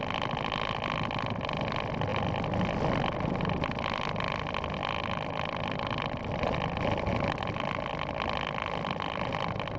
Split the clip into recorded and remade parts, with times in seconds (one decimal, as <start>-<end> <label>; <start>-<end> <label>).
0.0-9.8 recorded